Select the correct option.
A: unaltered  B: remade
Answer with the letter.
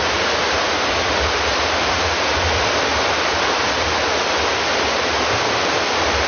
A